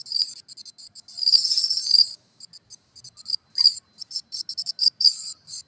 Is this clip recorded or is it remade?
recorded